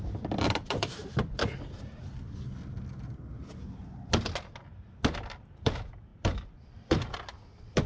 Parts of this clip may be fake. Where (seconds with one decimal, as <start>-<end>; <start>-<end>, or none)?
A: 0.0-2.6; 5.3-7.9